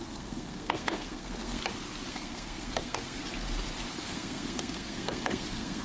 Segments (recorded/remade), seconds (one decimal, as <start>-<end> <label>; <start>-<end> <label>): 0.0-1.6 remade; 1.6-2.1 recorded; 2.1-3.2 remade; 3.2-3.9 recorded; 3.9-5.8 remade